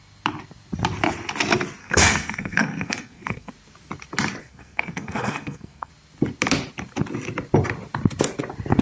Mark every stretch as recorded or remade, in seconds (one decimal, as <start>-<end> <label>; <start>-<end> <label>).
0.0-1.8 recorded; 1.8-3.5 remade; 3.5-4.4 recorded; 4.4-5.9 remade; 5.9-8.8 recorded